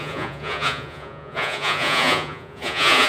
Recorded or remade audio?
remade